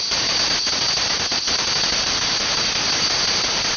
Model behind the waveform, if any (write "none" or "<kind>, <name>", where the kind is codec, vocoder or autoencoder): none